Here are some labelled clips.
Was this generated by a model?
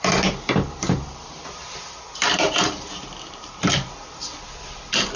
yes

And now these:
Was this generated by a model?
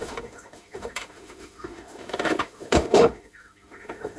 yes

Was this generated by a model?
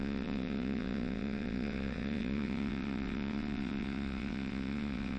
yes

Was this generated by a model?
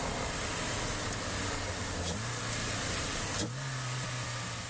no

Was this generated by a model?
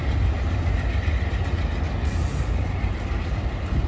no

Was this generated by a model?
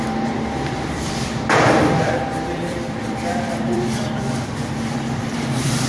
yes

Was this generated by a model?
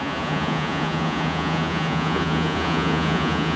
yes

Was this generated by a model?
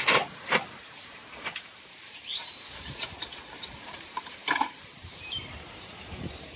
yes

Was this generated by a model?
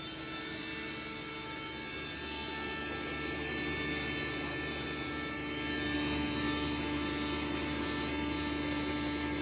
no